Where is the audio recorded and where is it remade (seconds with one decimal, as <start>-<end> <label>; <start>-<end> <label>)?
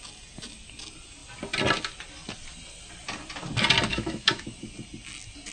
0.0-3.9 recorded; 3.9-4.4 remade; 4.4-5.5 recorded